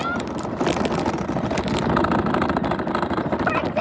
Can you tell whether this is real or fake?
real